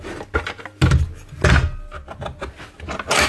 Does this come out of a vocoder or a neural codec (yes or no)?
no